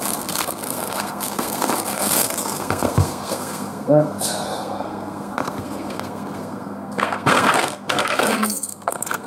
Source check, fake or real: fake